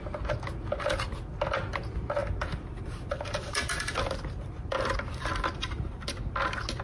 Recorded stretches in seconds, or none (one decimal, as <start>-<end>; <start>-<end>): 0.0-2.2; 6.3-6.8